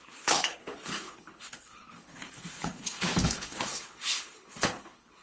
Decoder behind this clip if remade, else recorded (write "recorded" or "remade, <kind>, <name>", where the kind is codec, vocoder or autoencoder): remade, codec, HILCodec